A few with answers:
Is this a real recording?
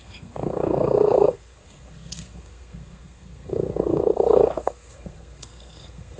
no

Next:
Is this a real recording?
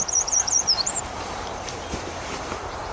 no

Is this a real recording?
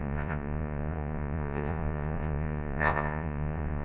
no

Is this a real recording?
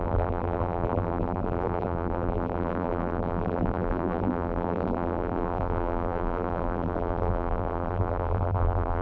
no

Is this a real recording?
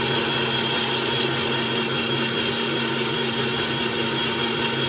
yes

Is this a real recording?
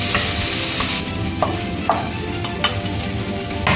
yes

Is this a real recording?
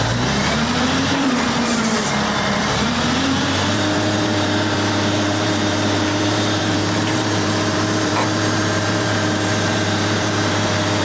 no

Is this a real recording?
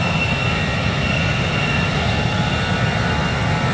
yes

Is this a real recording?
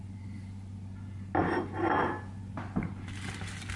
yes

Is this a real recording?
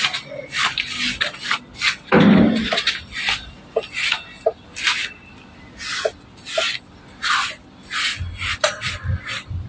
yes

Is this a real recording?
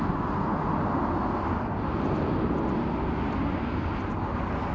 yes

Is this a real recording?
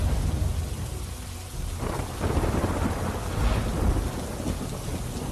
yes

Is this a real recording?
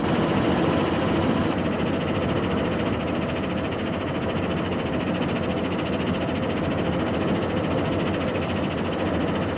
yes